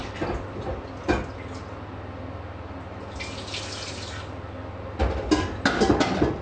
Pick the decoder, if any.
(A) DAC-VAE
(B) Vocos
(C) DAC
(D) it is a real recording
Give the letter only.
D